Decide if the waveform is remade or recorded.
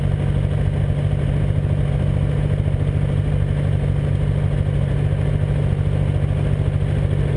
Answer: recorded